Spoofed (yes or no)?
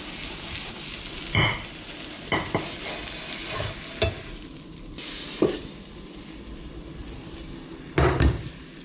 no